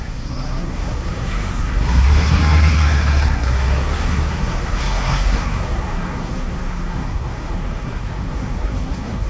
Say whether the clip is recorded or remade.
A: remade